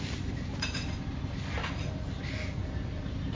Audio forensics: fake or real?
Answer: real